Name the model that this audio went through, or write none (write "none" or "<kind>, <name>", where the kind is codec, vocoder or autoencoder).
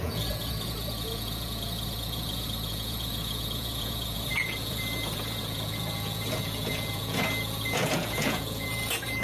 vocoder, Vocos